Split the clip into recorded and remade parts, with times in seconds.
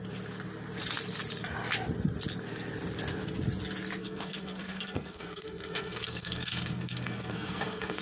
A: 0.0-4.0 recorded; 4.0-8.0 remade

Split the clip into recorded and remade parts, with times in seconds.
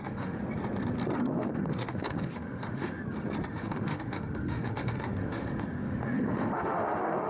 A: 0.0-0.4 remade; 0.4-1.3 recorded; 1.3-3.0 remade; 3.0-3.5 recorded; 3.5-7.3 remade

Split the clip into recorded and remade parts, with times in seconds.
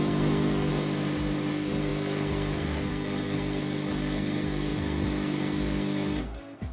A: 0.0-0.7 remade; 0.7-1.5 recorded; 1.5-6.7 remade